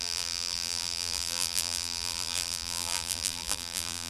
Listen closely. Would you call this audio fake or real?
fake